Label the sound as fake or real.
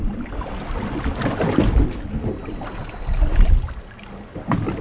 real